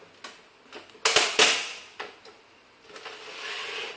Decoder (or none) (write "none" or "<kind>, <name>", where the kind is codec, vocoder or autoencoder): none